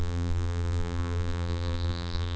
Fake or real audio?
fake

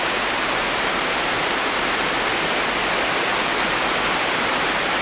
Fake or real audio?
real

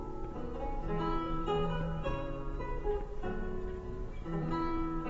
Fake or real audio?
fake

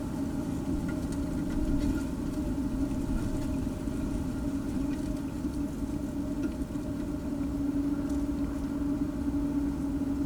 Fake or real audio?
real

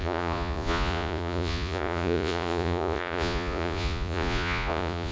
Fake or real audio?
fake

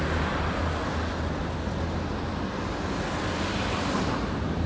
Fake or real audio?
real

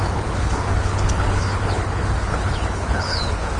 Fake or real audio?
fake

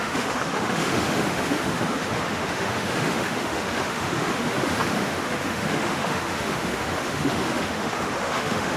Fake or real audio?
fake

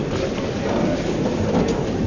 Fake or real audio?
real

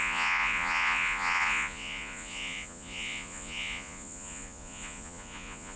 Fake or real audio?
fake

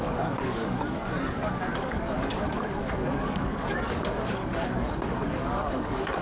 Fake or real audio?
fake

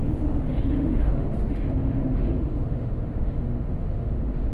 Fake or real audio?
fake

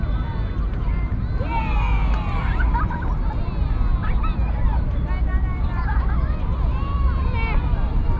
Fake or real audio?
real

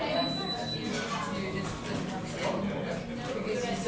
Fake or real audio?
real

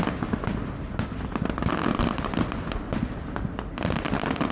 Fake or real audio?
real